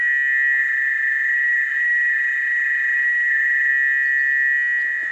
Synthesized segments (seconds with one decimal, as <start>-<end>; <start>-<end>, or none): 0.6-3.7